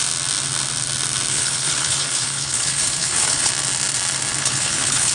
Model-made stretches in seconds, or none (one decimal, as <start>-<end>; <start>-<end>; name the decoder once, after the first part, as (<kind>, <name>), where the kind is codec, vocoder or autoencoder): 1.3-3.5 (codec, HILCodec); 4.4-5.1